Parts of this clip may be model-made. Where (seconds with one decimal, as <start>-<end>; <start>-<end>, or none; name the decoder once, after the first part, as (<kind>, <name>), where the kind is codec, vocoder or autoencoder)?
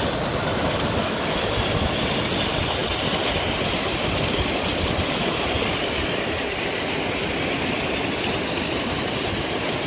none